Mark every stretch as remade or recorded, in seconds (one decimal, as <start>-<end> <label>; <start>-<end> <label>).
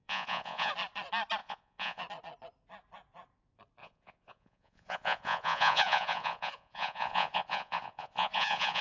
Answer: 0.0-0.7 remade; 0.7-1.4 recorded; 1.4-2.0 remade; 2.0-3.8 recorded; 3.8-8.8 remade